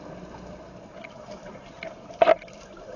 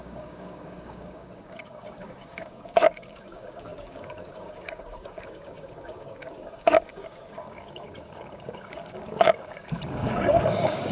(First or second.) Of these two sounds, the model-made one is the second